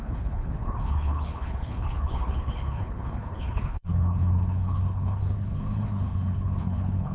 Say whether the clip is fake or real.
fake